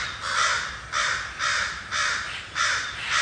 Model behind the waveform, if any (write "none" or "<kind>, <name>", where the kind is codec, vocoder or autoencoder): none